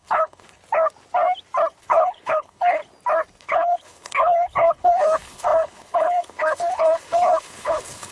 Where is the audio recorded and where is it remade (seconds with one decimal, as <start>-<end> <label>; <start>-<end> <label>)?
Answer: 0.0-0.6 remade; 0.6-1.8 recorded; 1.8-2.8 remade; 2.8-3.4 recorded; 3.4-8.1 remade